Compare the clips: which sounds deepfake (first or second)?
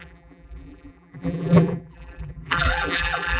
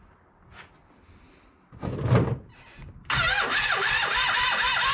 first